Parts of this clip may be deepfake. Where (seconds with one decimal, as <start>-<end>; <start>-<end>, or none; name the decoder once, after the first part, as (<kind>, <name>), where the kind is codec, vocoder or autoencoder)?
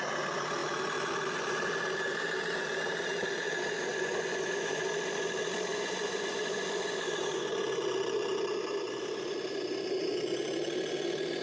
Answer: 3.9-4.8 (vocoder, Vocos); 5.7-7.5